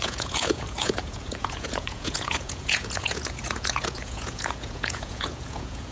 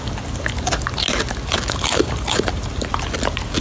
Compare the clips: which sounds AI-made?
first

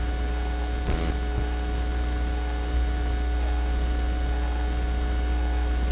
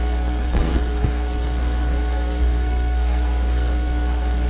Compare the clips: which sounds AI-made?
second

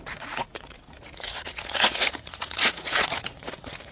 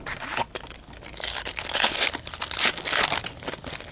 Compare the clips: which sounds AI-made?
first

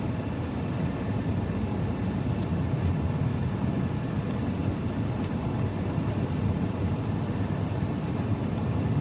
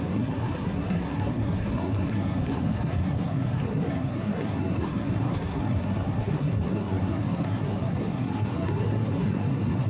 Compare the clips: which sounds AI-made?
second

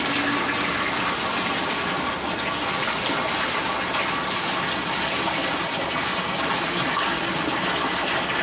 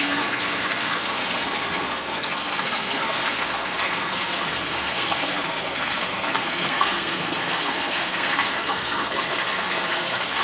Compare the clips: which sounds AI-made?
second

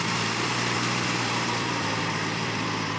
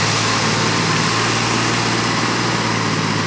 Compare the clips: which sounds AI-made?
first